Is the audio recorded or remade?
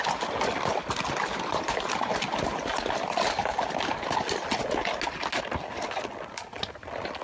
recorded